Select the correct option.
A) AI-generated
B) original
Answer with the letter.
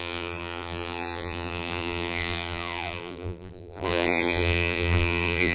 A